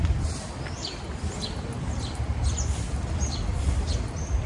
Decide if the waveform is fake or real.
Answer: fake